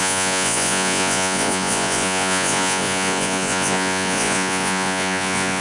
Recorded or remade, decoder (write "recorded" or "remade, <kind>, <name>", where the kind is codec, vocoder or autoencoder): remade, vocoder, Vocos